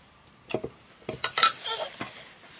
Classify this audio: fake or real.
real